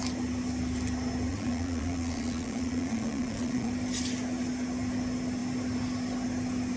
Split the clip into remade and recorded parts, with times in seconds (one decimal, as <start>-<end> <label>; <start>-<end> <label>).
0.0-1.3 recorded; 1.3-3.7 remade; 3.7-6.8 recorded